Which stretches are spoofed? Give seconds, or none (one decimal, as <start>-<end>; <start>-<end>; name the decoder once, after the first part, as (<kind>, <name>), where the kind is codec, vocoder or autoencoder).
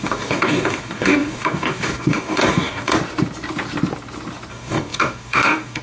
0.0-2.9 (codec, DAC); 4.5-5.8